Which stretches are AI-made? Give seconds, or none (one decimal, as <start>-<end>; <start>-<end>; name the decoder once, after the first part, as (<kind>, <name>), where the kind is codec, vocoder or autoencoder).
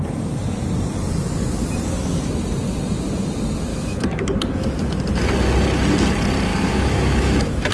3.7-5.0 (autoencoder, DAC-VAE); 6.5-7.7